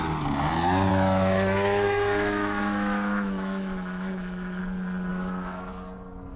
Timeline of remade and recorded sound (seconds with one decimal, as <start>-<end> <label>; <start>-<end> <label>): 0.0-0.9 recorded; 0.9-4.6 remade; 4.6-5.1 recorded; 5.1-5.7 remade; 5.7-6.4 recorded